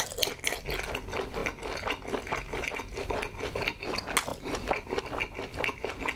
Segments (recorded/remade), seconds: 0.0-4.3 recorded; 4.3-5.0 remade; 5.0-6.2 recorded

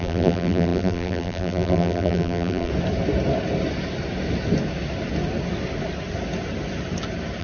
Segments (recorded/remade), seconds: 0.0-2.7 remade; 2.7-7.4 recorded

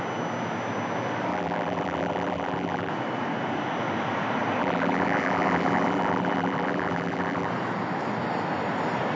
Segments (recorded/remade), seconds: 0.0-1.3 recorded; 1.3-2.9 remade; 2.9-4.6 recorded; 4.6-7.5 remade; 7.5-9.2 recorded

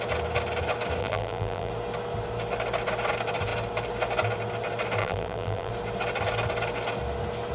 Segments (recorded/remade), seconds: 0.0-1.0 recorded; 1.0-1.7 remade; 1.7-5.0 recorded; 5.0-5.7 remade; 5.7-7.5 recorded

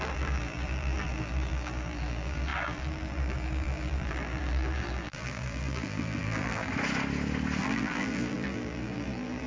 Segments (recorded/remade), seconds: 0.0-6.7 remade; 6.7-7.6 recorded; 7.6-9.5 remade